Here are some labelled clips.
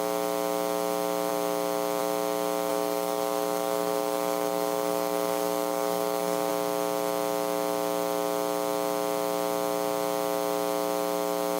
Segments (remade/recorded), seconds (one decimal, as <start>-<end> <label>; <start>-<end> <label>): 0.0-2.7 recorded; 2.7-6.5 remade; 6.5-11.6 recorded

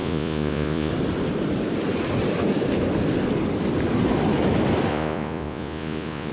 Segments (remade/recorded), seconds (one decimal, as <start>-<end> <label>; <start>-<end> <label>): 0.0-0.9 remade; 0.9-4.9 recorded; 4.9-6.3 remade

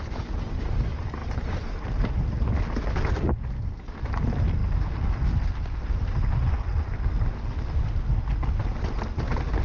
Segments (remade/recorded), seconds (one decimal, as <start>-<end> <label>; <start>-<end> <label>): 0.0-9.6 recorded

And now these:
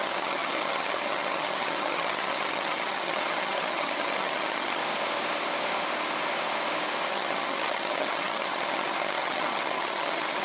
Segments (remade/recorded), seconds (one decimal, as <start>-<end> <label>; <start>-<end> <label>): 0.0-4.8 remade; 4.8-7.1 recorded; 7.1-10.4 remade